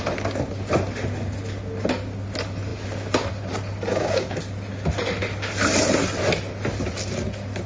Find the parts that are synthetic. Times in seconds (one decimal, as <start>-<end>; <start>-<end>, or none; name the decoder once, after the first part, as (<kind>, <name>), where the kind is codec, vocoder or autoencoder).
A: 3.9-4.4 (codec, DAC)